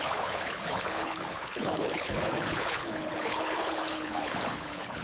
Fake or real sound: fake